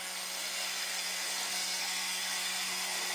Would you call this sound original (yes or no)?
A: no